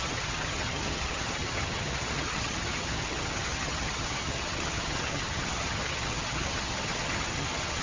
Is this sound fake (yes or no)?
yes